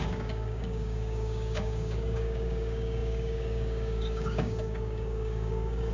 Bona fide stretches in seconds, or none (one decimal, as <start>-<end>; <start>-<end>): none